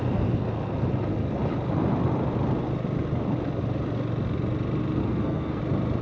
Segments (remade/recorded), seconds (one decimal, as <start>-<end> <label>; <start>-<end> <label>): 0.0-5.0 recorded; 5.0-5.6 remade; 5.6-6.0 recorded

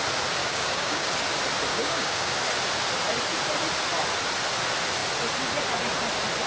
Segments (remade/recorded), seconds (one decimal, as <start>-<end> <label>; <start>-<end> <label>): 0.0-0.4 recorded; 0.4-1.1 remade; 1.1-1.7 recorded; 1.7-2.3 remade; 2.3-6.5 recorded

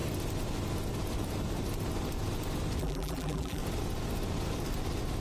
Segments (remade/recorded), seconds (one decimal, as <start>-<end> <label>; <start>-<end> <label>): 0.0-2.8 recorded; 2.8-3.6 remade; 3.6-5.2 recorded

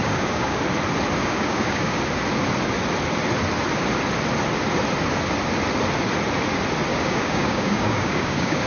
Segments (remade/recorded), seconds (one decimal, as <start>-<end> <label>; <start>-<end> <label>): 0.0-0.6 remade; 0.6-1.2 recorded; 1.2-2.0 remade; 2.0-6.9 recorded; 6.9-8.7 remade

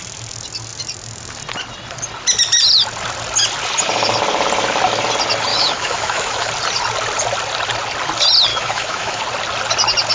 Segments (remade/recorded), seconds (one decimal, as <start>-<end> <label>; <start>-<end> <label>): 0.0-5.5 recorded; 5.5-6.5 remade; 6.5-8.5 recorded; 8.5-9.2 remade; 9.2-10.1 recorded

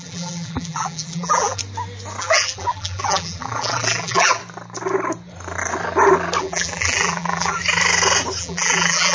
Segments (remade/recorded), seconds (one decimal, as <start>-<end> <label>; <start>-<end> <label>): 0.0-1.6 remade; 1.6-2.2 recorded; 2.2-4.4 remade; 4.4-6.4 recorded; 6.4-7.6 remade; 7.6-8.4 recorded; 8.4-9.1 remade